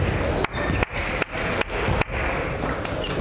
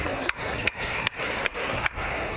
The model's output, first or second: second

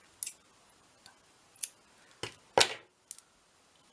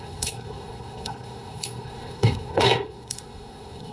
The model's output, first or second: second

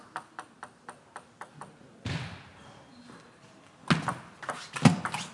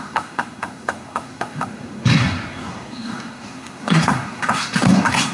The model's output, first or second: second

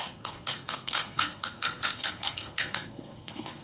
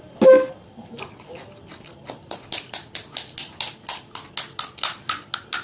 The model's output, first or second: first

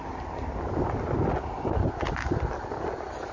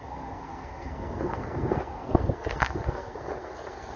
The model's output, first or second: second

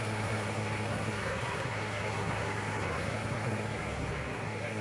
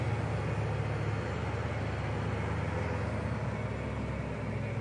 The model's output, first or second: first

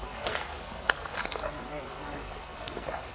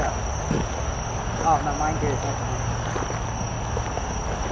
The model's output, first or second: first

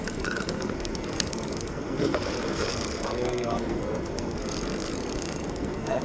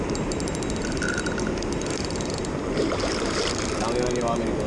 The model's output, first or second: first